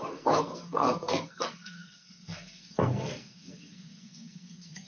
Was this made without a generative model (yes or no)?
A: no